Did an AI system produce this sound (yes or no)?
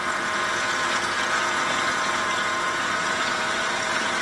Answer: yes